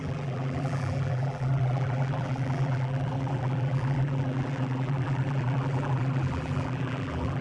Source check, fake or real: fake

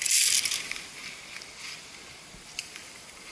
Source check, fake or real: real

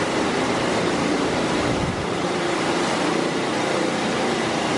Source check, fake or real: fake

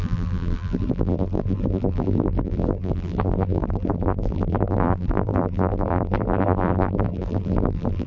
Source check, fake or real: fake